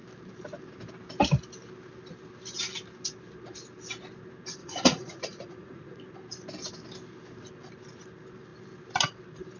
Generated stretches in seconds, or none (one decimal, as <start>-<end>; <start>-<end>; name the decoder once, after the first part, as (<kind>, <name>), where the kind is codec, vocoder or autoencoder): 4.6-6.0 (vocoder, Vocos)